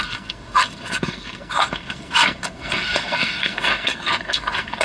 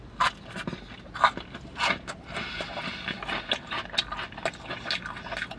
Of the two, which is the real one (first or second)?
second